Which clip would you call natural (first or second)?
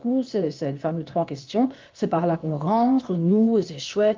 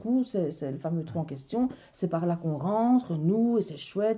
second